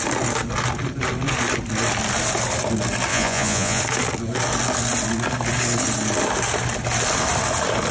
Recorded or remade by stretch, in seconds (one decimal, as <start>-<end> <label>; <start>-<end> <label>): 0.0-3.1 recorded; 3.1-3.8 remade; 3.8-7.9 recorded